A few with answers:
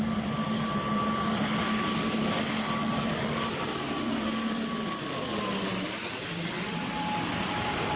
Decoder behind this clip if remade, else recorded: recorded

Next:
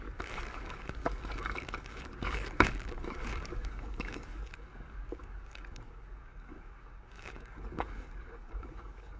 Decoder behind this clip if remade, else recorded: remade, codec, DAC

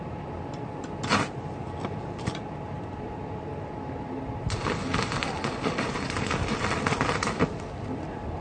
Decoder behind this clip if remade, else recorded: remade, vocoder, BigVGAN v2